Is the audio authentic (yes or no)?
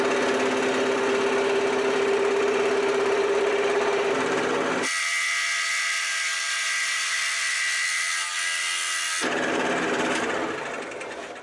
yes